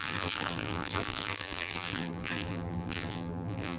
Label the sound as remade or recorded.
remade